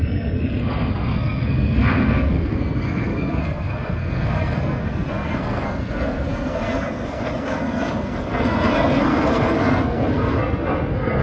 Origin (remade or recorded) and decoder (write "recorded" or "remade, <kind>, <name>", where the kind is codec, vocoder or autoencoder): remade, codec, SNAC